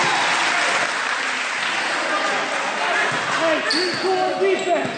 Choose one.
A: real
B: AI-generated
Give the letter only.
A